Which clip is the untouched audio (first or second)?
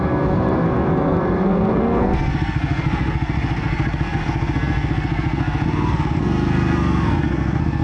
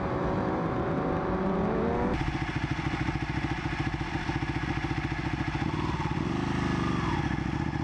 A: second